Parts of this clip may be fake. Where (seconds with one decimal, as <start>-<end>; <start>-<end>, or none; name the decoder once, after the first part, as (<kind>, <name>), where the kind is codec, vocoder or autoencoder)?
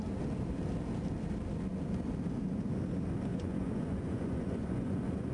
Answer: 3.3-5.3 (vocoder, Vocos)